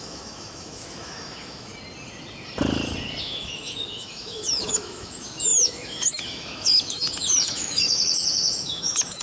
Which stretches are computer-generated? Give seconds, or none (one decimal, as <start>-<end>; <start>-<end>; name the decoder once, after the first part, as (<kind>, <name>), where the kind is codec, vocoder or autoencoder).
0.0-1.7 (autoencoder, DAC-VAE); 3.2-9.2